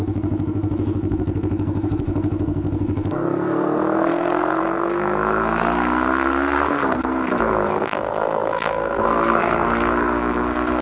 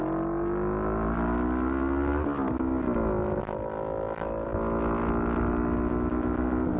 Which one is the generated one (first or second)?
first